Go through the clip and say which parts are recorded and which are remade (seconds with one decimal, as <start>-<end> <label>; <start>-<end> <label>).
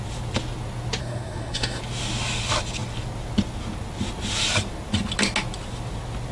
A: 0.0-1.0 recorded; 1.0-1.8 remade; 1.8-6.3 recorded